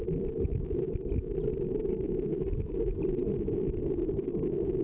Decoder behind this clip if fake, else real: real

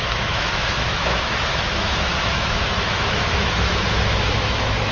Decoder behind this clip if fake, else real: fake, autoencoder, DAC-VAE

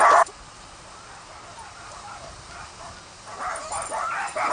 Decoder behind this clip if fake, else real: real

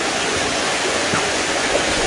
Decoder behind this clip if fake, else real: fake, vocoder, Vocos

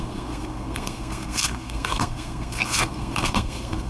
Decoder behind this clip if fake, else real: fake, codec, SNAC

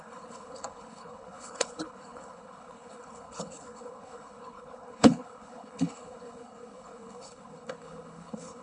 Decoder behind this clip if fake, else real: fake, codec, HILCodec